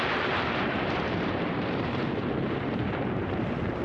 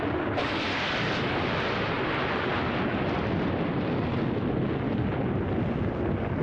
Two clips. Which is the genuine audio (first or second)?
second